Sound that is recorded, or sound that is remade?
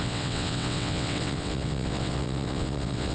remade